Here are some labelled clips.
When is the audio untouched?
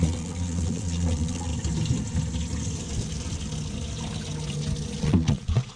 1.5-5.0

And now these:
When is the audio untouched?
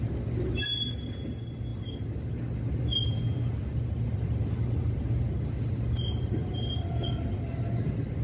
0.0-8.2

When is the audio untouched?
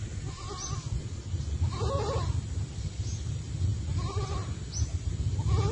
0.0-5.7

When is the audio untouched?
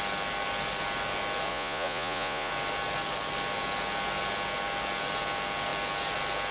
0.0-1.5; 2.5-6.5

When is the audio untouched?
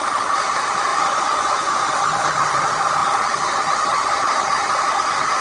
0.0-0.9; 1.8-5.4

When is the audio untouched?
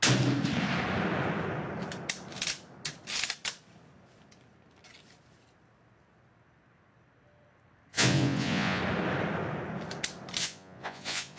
0.0-7.9; 8.8-10.4